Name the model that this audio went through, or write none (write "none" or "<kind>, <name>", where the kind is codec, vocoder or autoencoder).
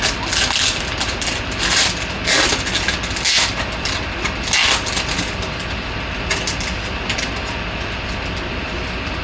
none